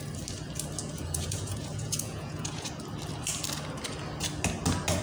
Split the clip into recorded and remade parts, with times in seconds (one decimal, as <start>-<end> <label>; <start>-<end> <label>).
0.0-0.8 recorded; 0.8-2.7 remade; 2.7-5.0 recorded